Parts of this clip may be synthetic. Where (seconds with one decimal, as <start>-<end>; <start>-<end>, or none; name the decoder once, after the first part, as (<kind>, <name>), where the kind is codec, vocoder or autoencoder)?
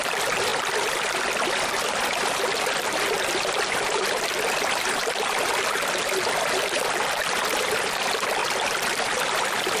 0.0-9.8 (vocoder, BigVGAN v2)